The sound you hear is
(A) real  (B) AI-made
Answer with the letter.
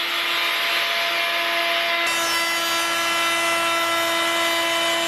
A